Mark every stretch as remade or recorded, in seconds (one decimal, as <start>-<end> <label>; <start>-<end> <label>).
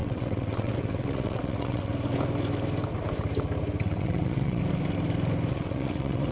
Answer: 0.0-1.9 remade; 1.9-3.8 recorded; 3.8-4.6 remade; 4.6-5.5 recorded; 5.5-6.3 remade